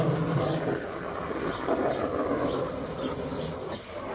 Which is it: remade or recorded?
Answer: recorded